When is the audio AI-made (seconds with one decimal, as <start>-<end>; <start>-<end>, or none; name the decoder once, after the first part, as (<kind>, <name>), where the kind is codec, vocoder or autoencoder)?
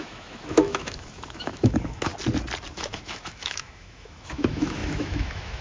0.0-2.1 (autoencoder, DAC-VAE); 2.7-5.6